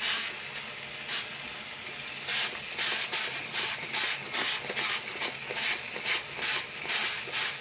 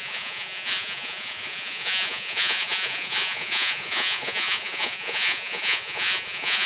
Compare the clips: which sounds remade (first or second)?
second